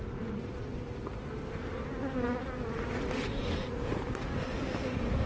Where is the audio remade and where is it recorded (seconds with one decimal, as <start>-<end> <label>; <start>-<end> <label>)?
0.0-5.3 recorded